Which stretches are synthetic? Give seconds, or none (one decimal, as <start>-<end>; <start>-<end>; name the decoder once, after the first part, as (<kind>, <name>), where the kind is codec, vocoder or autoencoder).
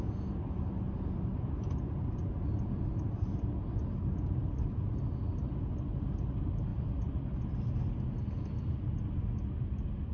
2.2-4.1 (vocoder, BigVGAN v2); 6.7-7.8